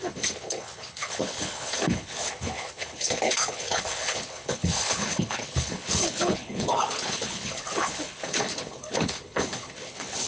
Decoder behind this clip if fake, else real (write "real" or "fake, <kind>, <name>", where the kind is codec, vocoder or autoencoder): fake, codec, HILCodec